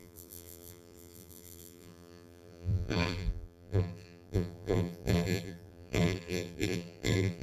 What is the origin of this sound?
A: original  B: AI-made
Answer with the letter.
B